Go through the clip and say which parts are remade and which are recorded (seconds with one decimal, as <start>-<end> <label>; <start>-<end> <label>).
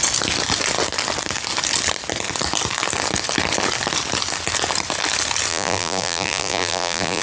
0.0-5.5 recorded; 5.5-7.2 remade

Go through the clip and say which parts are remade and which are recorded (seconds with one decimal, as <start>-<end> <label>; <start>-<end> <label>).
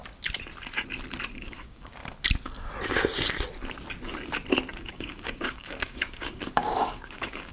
0.0-1.3 recorded; 1.3-2.0 remade; 2.0-4.8 recorded; 4.8-7.5 remade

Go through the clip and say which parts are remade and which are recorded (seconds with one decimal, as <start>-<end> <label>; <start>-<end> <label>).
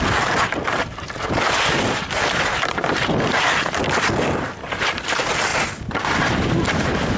0.0-7.2 recorded